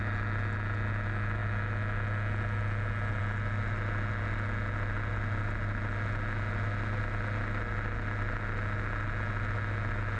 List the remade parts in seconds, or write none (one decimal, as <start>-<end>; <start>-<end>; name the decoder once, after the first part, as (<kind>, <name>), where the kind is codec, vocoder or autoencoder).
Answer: none